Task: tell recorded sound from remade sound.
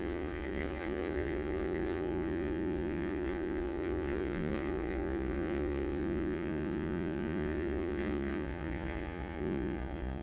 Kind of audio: remade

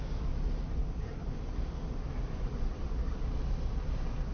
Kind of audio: recorded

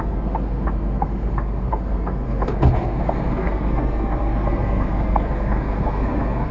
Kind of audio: remade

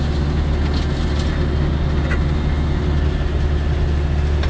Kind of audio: recorded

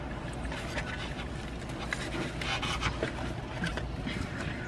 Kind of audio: recorded